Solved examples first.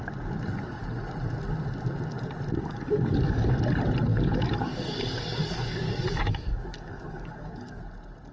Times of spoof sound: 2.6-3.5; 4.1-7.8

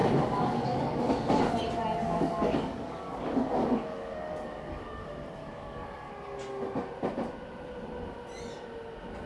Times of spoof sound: 0.0-1.6; 2.0-5.0; 5.4-6.1

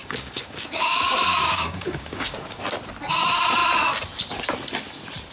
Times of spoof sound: 0.0-2.6

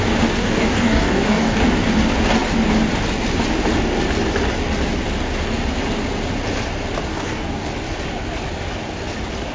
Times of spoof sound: 0.4-1.6; 7.1-7.7

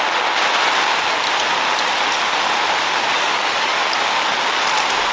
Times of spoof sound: 3.1-3.9

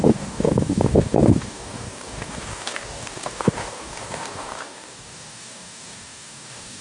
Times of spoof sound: 0.0-6.8

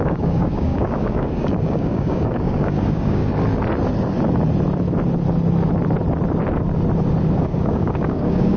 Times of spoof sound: 0.0-3.2; 7.4-8.6

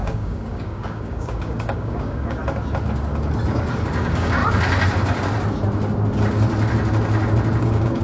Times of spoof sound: 0.0-2.4; 3.9-4.4; 7.6-8.0